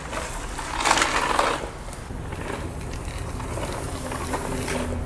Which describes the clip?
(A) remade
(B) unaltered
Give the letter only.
B